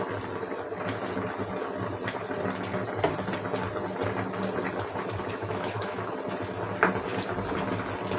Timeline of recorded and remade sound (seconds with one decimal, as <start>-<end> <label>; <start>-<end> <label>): 0.0-5.4 recorded; 5.4-6.1 remade; 6.1-8.2 recorded

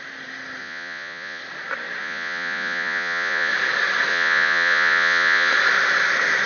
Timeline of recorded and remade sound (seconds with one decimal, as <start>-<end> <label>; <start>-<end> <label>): 0.0-0.6 recorded; 0.6-1.4 remade; 1.4-2.0 recorded; 2.0-3.5 remade; 3.5-4.1 recorded; 4.1-5.5 remade; 5.5-6.5 recorded